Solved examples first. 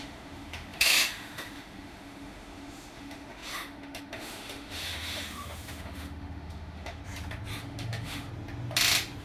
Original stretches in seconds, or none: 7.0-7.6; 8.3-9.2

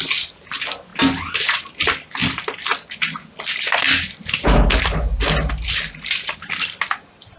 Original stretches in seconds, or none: 0.0-7.4

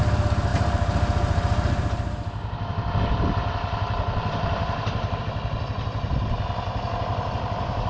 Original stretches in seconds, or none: 0.0-0.5; 5.2-7.9

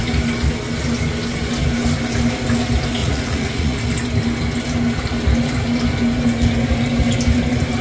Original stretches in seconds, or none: 0.0-3.0; 3.8-7.8

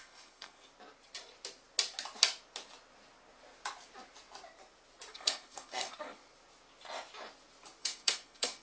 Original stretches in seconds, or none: 0.7-5.1; 6.2-7.8

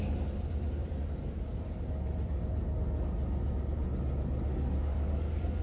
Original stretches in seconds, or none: 0.0-4.5